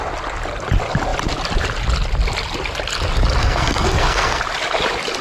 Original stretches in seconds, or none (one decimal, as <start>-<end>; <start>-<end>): 0.0-3.4; 4.4-5.2